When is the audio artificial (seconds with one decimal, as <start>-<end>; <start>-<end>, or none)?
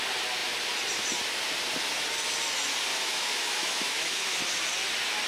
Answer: 2.9-4.4